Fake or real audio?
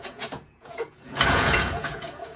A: fake